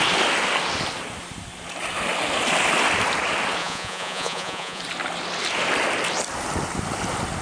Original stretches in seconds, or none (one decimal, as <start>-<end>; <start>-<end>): 0.0-3.6; 4.8-7.4